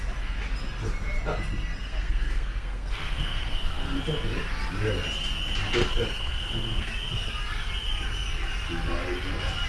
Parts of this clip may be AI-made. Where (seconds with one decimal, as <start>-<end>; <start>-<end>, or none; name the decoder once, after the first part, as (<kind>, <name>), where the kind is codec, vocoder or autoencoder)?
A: 1.8-4.0 (codec, SNAC); 5.8-6.9